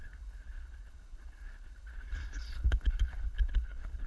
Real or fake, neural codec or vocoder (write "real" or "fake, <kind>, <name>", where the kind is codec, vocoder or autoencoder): fake, codec, HILCodec